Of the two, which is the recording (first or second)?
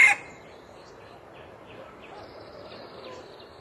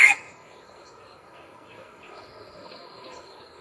first